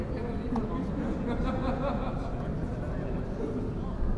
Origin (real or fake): real